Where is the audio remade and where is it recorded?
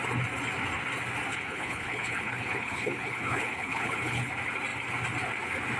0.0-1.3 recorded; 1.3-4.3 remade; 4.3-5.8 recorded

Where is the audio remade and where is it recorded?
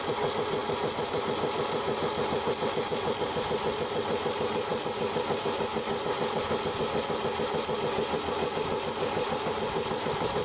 0.0-10.4 recorded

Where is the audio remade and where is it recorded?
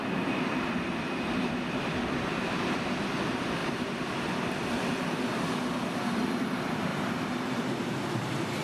0.0-1.0 recorded; 1.0-8.6 remade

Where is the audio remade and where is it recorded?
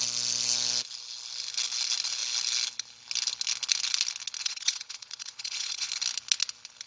0.0-4.4 recorded; 4.4-5.9 remade; 5.9-6.9 recorded